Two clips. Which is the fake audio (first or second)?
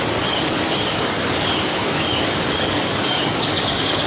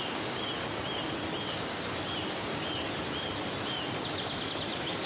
first